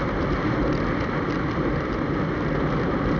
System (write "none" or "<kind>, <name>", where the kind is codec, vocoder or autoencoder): vocoder, BigVGAN v2